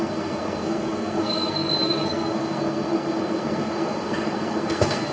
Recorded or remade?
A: remade